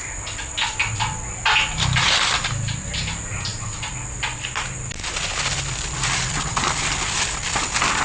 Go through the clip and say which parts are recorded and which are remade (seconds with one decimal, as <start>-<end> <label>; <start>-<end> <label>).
0.0-8.0 recorded